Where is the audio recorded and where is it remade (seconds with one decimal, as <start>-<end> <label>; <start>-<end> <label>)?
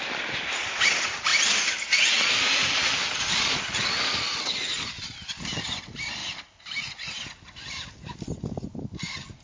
0.0-9.4 recorded